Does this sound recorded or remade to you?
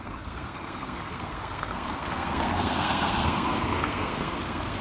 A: remade